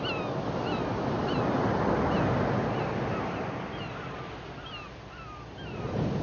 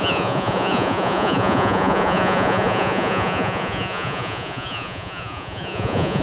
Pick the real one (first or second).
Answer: first